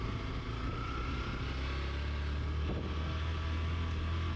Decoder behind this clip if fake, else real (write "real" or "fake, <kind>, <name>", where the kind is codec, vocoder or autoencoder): real